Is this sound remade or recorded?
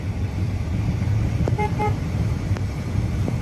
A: remade